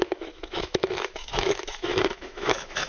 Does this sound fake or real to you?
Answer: fake